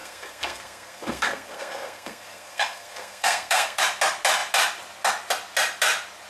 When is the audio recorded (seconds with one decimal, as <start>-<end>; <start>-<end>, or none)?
3.8-6.3